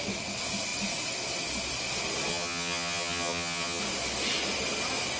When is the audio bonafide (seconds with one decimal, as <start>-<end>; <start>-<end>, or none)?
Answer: 0.0-2.3; 3.8-5.2